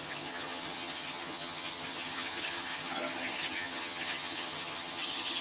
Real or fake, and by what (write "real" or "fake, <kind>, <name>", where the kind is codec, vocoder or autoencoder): fake, vocoder, HiFi-GAN